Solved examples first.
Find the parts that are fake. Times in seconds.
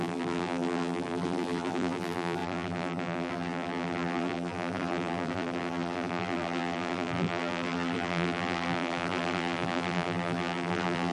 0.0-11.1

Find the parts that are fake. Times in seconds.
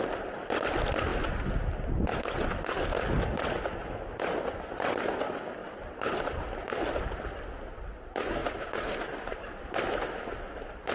5.6-6.1; 8.4-9.6